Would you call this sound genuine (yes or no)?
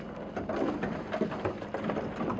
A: yes